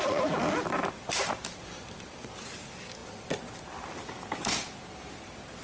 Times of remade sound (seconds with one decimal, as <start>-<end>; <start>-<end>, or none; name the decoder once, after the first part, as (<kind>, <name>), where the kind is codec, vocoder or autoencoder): none